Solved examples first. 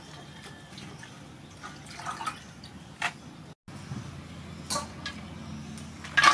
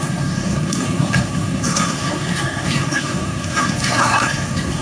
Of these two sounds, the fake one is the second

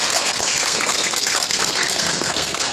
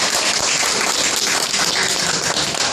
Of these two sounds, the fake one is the first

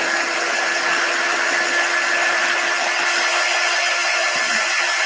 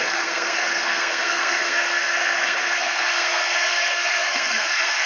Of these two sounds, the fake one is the second